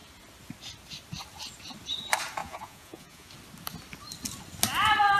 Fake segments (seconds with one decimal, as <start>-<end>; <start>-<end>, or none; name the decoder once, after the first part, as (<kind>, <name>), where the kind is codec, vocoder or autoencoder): 2.4-3.3 (vocoder, Vocos)